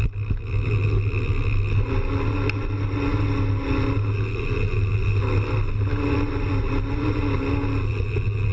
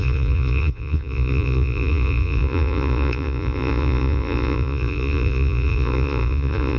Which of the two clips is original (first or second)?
first